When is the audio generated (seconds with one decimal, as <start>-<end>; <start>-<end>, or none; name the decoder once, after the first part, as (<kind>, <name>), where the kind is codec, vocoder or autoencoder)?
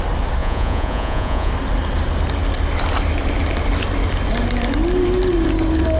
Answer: 0.4-1.5 (vocoder, Vocos)